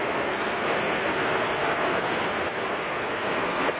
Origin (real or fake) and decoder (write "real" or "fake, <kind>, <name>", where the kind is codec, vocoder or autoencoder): fake, codec, SNAC